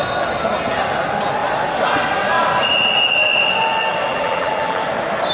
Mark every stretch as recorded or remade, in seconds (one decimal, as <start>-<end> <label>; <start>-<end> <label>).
0.0-4.1 recorded; 4.1-4.8 remade; 4.8-5.3 recorded